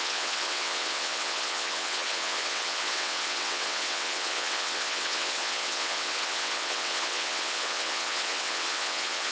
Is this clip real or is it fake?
fake